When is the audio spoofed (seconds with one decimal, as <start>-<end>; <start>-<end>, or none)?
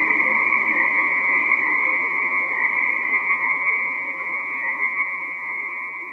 0.9-1.4; 1.9-2.5; 3.1-6.1